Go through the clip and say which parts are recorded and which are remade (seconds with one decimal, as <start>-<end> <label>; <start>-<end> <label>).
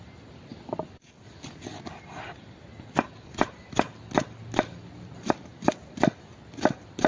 0.0-7.1 recorded